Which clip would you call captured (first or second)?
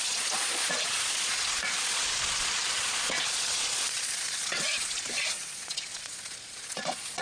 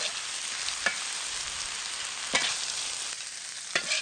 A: second